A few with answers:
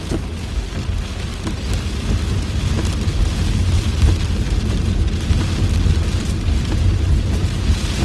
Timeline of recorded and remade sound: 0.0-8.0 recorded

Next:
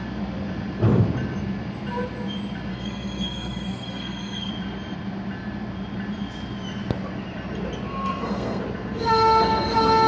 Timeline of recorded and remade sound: 0.0-2.7 recorded; 2.7-4.5 remade; 4.5-7.9 recorded; 7.9-8.6 remade; 8.6-10.1 recorded

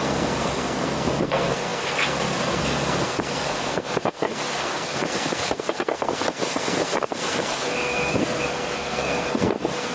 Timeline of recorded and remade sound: 0.0-9.9 remade

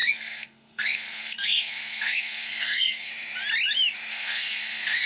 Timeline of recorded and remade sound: 0.0-3.1 remade; 3.1-4.1 recorded; 4.1-5.1 remade

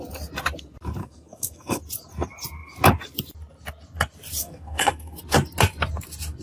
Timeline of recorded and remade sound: 0.0-1.0 recorded; 1.0-1.8 remade; 1.8-4.4 recorded; 4.4-5.2 remade; 5.2-6.4 recorded